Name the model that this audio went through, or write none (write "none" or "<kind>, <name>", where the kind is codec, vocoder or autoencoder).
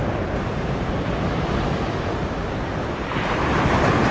none